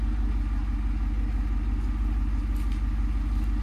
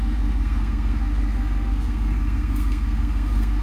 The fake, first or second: second